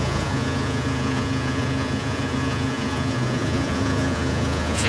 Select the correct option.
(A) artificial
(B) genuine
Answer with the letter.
A